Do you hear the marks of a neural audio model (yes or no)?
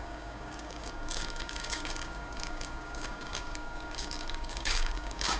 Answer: yes